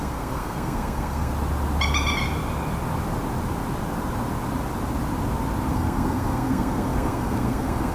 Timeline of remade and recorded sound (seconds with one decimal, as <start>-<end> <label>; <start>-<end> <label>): 0.0-1.3 remade; 1.3-5.7 recorded; 5.7-7.9 remade